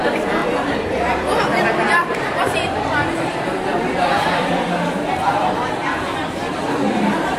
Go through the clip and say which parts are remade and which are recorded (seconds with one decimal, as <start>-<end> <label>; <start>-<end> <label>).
0.0-0.4 recorded; 0.4-4.5 remade; 4.5-7.4 recorded